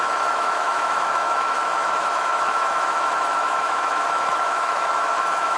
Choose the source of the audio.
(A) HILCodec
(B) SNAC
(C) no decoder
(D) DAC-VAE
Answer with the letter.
D